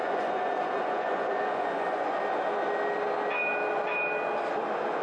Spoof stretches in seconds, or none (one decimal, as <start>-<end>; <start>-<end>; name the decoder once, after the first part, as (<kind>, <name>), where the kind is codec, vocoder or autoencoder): 0.0-2.2 (vocoder, Vocos)